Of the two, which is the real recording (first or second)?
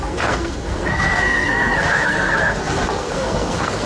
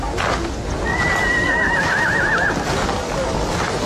second